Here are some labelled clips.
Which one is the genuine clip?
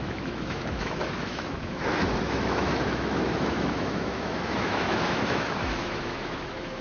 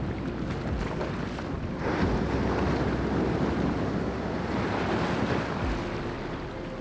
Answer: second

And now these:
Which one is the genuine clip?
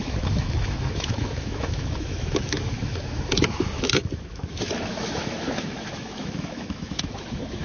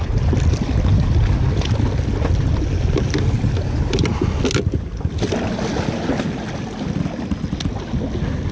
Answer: second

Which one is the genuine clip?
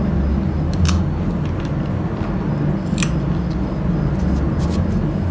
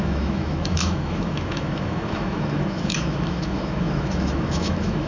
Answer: first